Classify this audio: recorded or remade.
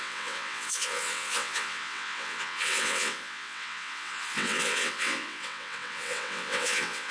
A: remade